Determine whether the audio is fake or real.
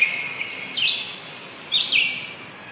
real